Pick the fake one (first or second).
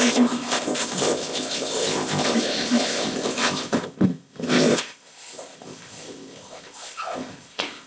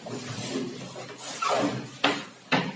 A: first